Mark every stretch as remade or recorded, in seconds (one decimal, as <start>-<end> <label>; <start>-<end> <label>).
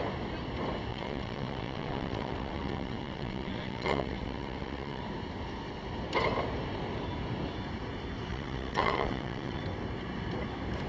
0.0-0.9 recorded; 0.9-5.0 remade; 5.0-8.3 recorded; 8.3-9.6 remade; 9.6-10.9 recorded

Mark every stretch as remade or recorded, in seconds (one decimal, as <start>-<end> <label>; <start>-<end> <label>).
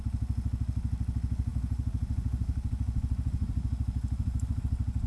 0.0-1.5 recorded; 1.5-4.6 remade; 4.6-5.1 recorded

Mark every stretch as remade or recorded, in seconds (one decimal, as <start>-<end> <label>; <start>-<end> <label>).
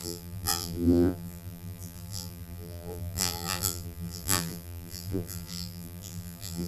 0.0-6.7 remade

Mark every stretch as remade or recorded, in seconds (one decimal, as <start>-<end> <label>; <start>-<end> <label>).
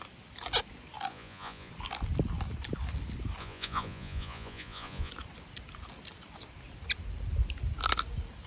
0.0-1.1 recorded; 1.1-1.7 remade; 1.7-3.4 recorded; 3.4-5.1 remade; 5.1-8.5 recorded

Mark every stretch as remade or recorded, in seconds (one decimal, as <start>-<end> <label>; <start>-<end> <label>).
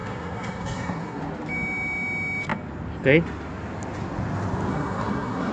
0.0-1.2 remade; 1.2-4.7 recorded; 4.7-5.5 remade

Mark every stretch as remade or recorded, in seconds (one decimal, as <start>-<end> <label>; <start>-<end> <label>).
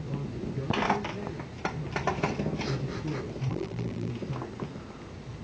0.0-3.5 recorded; 3.5-4.1 remade; 4.1-5.4 recorded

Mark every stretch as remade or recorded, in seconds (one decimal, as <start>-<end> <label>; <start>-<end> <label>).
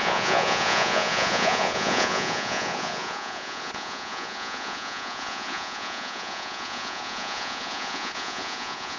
0.0-9.0 remade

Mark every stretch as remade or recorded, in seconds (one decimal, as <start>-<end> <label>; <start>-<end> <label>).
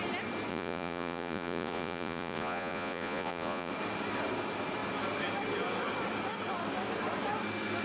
0.0-0.5 recorded; 0.5-3.7 remade; 3.7-7.8 recorded